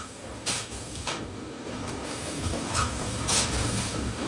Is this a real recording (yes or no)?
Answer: no